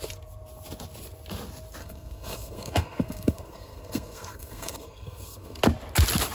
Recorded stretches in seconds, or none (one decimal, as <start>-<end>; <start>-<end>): 0.0-1.8; 5.6-6.3